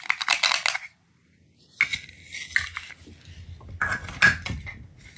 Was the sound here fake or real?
real